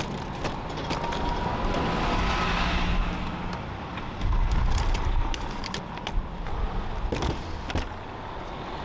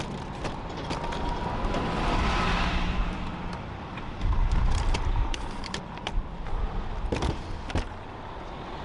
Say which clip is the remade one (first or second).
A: second